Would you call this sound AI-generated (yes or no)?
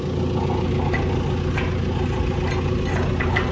no